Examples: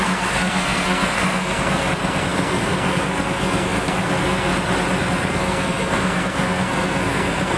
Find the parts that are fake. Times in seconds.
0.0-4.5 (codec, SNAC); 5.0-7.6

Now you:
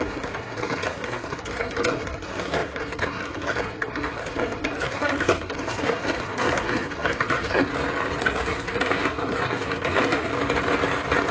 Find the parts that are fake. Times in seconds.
0.0-7.7 (codec, SNAC); 8.2-10.3

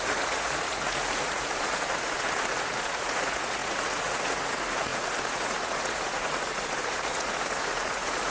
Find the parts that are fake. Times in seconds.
0.0-8.3 (vocoder, Vocos)

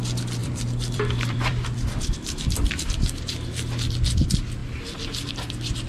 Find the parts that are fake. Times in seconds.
0.4-3.5 (vocoder, BigVGAN v2)

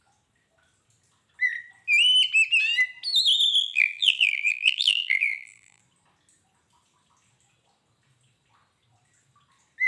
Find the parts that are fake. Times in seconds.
3.6-5.8 (vocoder, BigVGAN v2)

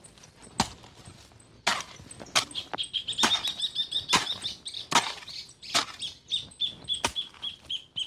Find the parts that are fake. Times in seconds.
none